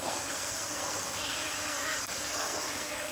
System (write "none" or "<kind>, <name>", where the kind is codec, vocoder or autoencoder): codec, SNAC